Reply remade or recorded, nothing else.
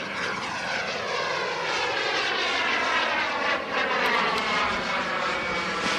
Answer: recorded